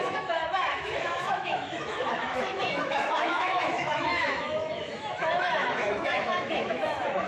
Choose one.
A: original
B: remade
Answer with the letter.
B